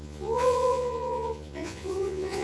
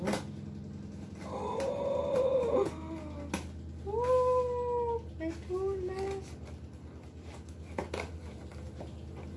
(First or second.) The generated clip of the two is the first